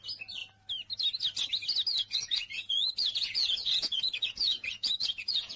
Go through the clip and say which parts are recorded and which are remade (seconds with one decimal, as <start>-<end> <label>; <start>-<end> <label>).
0.0-1.9 recorded; 1.9-5.6 remade